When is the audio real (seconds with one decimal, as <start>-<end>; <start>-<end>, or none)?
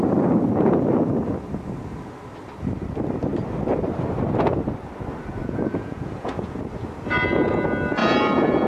0.0-5.4; 6.6-8.0